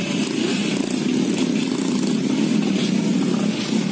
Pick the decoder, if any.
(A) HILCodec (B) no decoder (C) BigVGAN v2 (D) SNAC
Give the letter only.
B